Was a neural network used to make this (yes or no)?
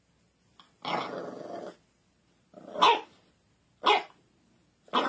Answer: no